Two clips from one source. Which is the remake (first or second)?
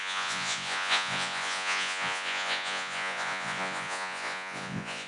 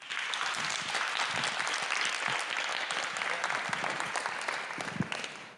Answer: first